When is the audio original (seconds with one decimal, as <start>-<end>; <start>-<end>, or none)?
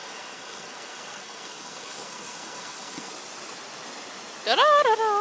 3.1-5.2